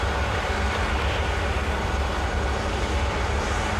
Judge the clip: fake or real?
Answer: real